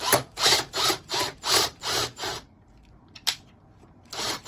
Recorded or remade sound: remade